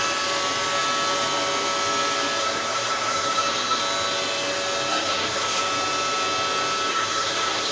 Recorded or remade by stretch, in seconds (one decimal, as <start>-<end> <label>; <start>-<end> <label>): 0.0-2.4 recorded; 2.4-3.8 remade; 3.8-4.9 recorded; 4.9-5.6 remade; 5.6-6.9 recorded; 6.9-7.7 remade